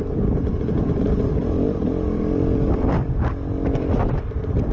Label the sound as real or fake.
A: fake